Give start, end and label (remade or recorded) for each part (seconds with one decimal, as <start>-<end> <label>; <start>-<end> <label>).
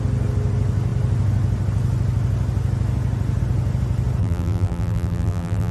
0.0-4.2 recorded; 4.2-5.7 remade